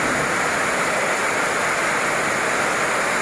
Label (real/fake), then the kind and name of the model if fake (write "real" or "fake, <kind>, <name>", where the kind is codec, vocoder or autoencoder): real